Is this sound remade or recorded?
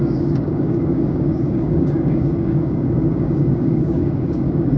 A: remade